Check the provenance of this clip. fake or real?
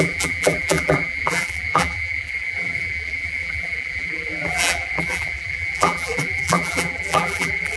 fake